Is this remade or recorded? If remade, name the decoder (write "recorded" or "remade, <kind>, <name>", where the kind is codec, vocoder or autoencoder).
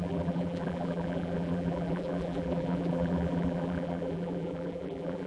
remade, vocoder, BigVGAN v2